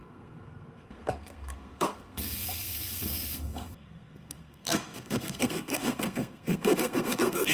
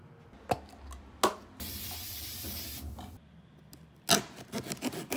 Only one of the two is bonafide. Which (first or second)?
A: second